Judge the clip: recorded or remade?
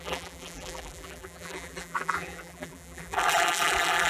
remade